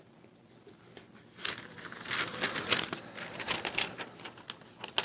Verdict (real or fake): real